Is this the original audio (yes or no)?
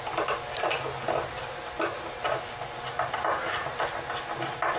yes